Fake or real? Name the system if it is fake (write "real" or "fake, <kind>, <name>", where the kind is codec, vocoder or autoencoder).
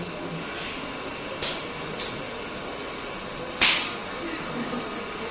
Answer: real